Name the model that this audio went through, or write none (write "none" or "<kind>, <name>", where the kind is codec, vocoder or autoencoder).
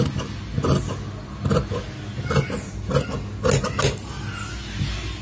none